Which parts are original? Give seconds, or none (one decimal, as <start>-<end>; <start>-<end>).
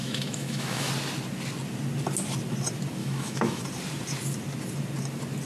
0.9-3.0; 3.6-5.5